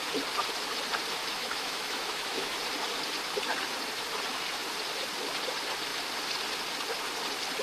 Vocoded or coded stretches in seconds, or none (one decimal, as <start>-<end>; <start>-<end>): 1.2-2.6